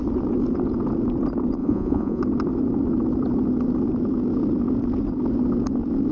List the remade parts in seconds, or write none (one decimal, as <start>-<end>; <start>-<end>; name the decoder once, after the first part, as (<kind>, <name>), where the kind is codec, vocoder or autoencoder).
1.6-2.2 (vocoder, Vocos)